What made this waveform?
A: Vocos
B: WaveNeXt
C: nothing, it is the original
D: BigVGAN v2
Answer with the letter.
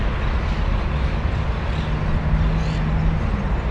C